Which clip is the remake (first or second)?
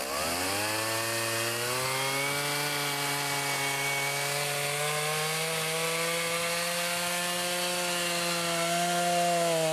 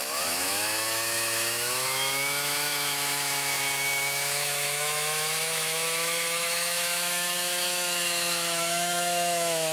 second